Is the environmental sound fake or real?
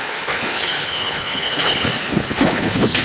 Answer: fake